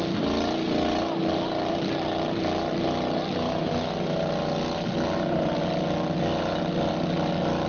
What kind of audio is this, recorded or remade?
recorded